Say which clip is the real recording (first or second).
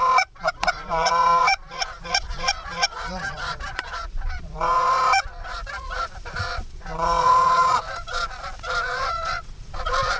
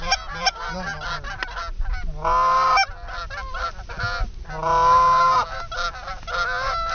second